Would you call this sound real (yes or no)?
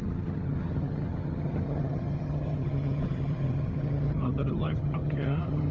no